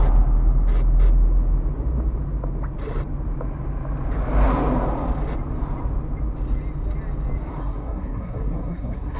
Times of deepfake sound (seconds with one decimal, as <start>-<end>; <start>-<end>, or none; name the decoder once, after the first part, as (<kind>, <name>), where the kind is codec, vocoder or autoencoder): 7.6-9.2 (codec, SNAC)